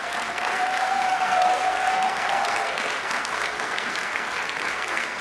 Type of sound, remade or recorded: remade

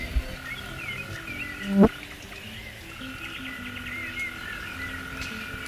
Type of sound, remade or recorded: recorded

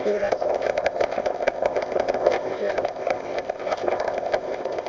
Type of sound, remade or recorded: remade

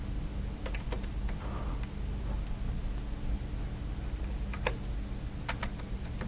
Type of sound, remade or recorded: recorded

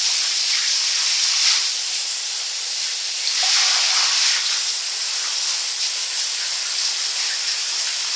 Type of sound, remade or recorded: recorded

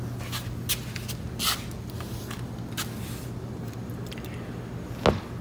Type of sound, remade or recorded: recorded